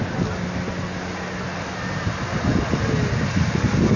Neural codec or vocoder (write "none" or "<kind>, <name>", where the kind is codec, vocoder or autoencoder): none